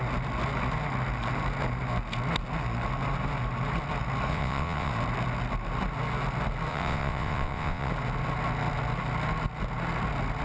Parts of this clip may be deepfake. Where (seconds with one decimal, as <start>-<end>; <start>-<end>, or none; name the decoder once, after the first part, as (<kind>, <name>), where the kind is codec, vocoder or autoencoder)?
4.3-4.9 (vocoder, WaveNeXt); 6.7-7.9